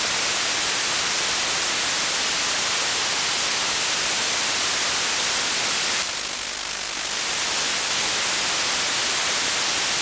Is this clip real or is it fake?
real